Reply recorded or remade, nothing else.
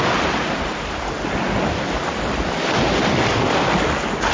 recorded